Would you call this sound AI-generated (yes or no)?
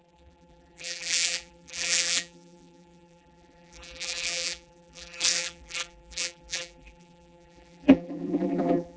yes